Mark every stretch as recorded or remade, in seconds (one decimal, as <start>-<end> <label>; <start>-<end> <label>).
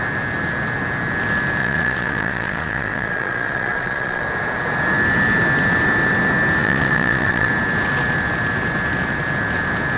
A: 0.0-1.6 recorded; 1.6-4.2 remade; 4.2-6.6 recorded; 6.6-7.5 remade; 7.5-10.0 recorded